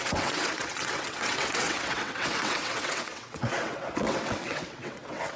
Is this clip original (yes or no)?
no